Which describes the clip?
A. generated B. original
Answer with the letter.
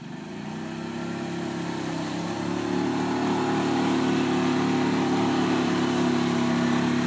B